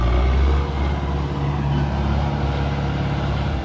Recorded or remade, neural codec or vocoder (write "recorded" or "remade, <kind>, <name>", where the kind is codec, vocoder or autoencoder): recorded